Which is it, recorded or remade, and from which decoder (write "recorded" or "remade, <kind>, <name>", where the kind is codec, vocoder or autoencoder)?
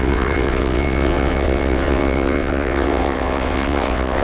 remade, vocoder, WaveNeXt